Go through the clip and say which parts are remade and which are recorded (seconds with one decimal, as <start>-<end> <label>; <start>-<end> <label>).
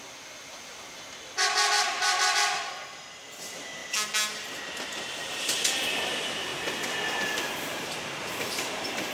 0.0-9.1 recorded